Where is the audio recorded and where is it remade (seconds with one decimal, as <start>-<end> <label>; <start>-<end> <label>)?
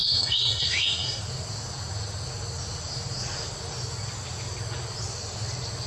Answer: 0.0-1.2 remade; 1.2-5.9 recorded